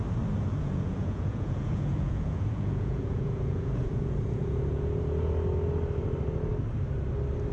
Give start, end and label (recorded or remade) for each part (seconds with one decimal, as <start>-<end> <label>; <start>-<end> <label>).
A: 0.0-0.5 recorded; 0.5-5.0 remade; 5.0-7.5 recorded

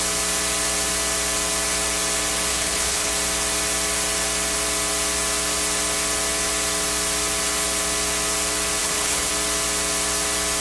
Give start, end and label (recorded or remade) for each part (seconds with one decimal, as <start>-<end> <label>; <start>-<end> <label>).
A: 0.0-2.5 recorded; 2.5-3.1 remade; 3.1-8.8 recorded; 8.8-9.3 remade; 9.3-10.6 recorded

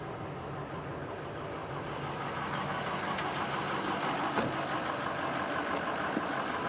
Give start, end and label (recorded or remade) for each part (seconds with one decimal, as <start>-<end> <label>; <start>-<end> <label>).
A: 0.0-6.7 recorded

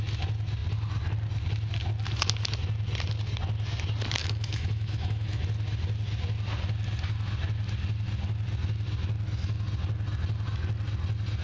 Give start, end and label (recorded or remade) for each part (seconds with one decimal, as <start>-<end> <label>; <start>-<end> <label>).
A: 0.0-4.2 recorded; 4.2-5.4 remade; 5.4-11.4 recorded

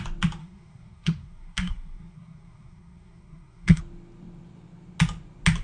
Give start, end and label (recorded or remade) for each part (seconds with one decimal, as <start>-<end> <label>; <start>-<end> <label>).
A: 0.0-0.4 recorded; 0.4-3.8 remade; 3.8-5.6 recorded

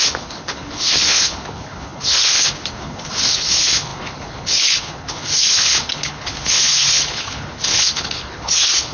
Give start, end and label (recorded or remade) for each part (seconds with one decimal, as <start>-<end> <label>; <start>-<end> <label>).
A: 0.0-8.9 remade